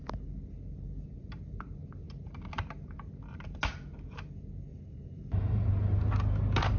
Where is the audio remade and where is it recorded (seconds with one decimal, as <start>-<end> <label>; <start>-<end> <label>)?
0.0-1.2 recorded; 1.2-3.6 remade; 3.6-4.7 recorded; 4.7-6.1 remade; 6.1-6.8 recorded